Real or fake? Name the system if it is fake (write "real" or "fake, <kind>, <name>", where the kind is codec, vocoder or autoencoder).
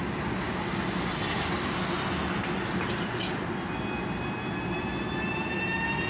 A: real